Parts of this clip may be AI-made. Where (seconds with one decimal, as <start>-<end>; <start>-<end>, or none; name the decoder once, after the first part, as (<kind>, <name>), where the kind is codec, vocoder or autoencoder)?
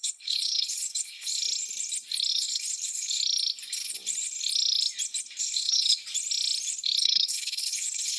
0.0-1.4 (codec, HILCodec); 2.3-3.2; 5.4-6.0; 7.0-8.2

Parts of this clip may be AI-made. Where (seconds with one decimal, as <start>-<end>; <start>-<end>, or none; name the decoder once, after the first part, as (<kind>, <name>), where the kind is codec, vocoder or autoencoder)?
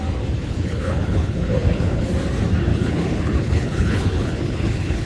0.4-2.1 (codec, HILCodec); 2.7-5.1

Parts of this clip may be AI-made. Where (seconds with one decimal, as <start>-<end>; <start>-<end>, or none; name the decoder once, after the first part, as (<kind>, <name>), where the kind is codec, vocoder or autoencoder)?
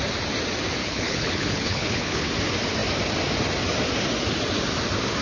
0.8-2.3 (codec, HILCodec)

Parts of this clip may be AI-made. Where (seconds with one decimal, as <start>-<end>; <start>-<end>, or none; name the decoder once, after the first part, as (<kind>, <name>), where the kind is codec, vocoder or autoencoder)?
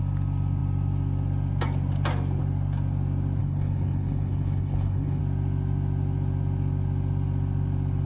3.4-5.2 (codec, HILCodec)